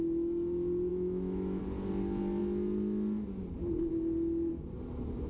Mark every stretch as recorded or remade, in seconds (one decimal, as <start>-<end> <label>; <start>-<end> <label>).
0.0-0.9 recorded; 0.9-1.6 remade; 1.6-5.3 recorded